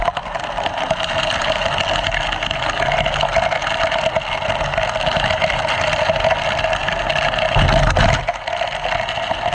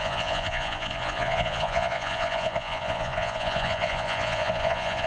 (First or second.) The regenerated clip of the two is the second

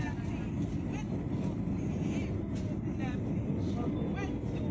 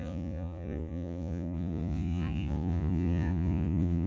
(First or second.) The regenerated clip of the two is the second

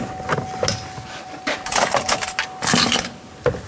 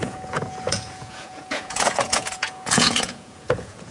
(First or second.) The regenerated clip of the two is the second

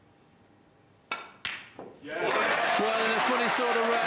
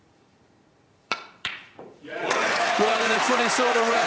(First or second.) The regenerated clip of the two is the second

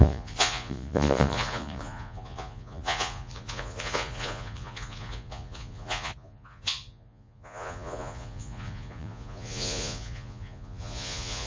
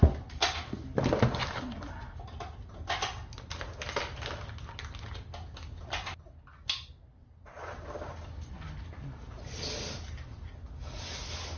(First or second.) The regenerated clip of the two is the first